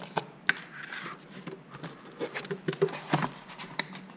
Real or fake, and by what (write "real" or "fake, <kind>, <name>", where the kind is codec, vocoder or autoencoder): real